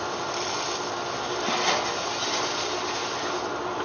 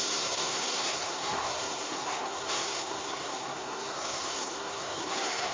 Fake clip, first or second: second